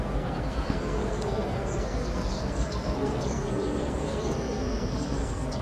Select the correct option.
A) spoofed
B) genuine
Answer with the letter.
A